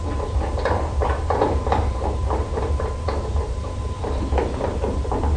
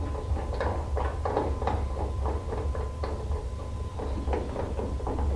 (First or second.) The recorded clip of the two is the second